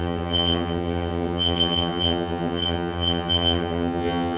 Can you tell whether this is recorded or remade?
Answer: remade